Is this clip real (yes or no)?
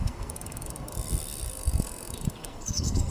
no